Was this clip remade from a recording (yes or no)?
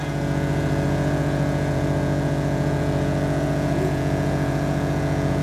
yes